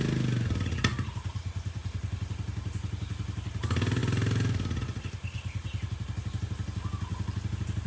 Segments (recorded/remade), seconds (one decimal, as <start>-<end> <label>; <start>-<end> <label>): 0.0-7.9 recorded